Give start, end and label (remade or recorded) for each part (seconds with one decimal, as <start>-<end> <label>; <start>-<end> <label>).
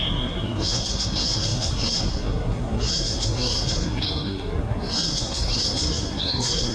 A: 0.0-6.7 remade